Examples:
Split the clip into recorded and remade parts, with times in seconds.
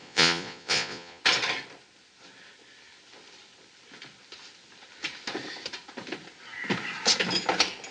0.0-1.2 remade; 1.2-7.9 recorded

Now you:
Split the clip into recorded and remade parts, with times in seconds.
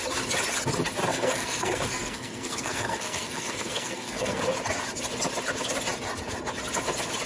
0.0-1.1 recorded; 1.1-4.4 remade; 4.4-7.3 recorded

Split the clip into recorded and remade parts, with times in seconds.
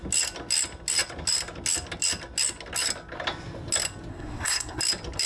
0.0-4.1 recorded; 4.1-4.8 remade; 4.8-5.3 recorded